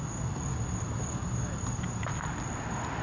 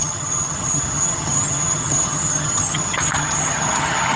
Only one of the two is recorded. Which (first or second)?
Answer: first